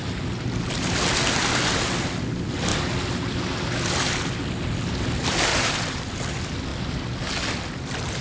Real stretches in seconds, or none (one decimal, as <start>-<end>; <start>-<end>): 0.0-5.5; 6.0-8.2